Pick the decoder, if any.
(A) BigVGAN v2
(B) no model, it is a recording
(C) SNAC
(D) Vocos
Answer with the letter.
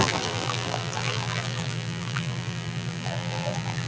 A